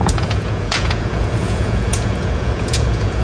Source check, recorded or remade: remade